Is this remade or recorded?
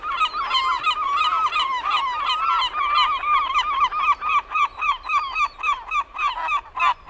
recorded